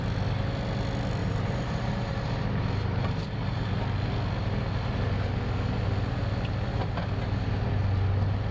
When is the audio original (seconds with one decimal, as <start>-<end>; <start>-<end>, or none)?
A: 0.0-1.2; 3.7-8.5

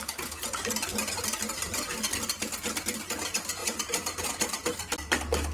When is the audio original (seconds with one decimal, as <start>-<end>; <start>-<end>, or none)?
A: 0.0-0.9; 2.0-3.6; 4.2-5.5